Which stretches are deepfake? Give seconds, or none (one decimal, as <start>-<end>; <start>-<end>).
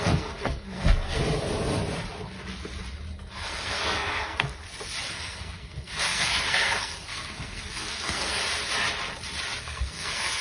0.0-1.2; 3.3-4.6; 5.1-8.4; 9.6-10.4